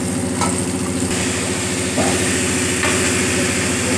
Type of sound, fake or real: real